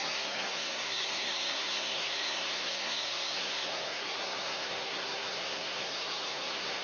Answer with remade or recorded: remade